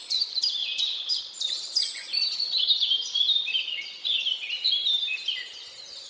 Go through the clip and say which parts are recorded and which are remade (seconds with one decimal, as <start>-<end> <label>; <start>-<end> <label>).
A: 0.0-6.1 remade